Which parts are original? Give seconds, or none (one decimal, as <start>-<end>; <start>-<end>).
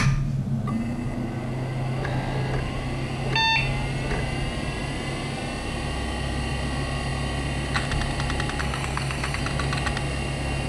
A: 0.0-8.6; 9.4-10.7